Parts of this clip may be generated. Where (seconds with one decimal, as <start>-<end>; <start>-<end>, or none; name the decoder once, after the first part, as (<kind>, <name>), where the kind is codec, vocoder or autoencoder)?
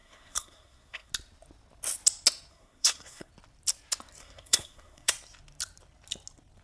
0.0-1.1 (codec, SNAC); 2.5-3.3; 4.2-5.1